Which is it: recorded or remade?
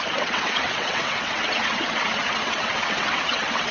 remade